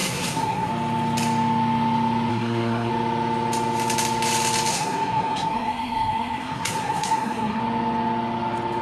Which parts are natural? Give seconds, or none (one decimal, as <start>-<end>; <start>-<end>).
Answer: 0.7-2.3; 2.9-4.7; 7.6-8.8